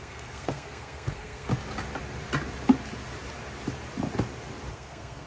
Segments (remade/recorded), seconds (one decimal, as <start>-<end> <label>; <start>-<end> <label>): 0.0-1.5 remade; 1.5-4.7 recorded; 4.7-5.3 remade